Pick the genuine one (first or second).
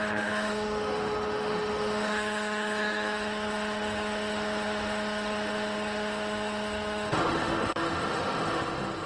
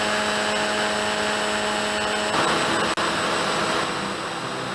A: second